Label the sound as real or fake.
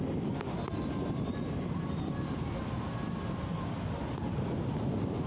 real